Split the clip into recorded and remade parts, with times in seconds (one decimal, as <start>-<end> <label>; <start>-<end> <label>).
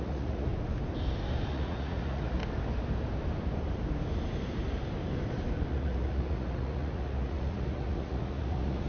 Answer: 0.0-0.5 remade; 0.5-1.5 recorded; 1.5-2.4 remade; 2.4-5.7 recorded; 5.7-8.9 remade